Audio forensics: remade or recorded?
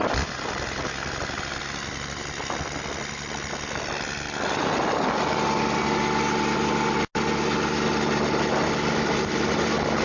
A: recorded